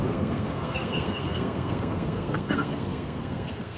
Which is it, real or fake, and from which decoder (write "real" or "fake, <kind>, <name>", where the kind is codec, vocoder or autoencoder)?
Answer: fake, codec, SNAC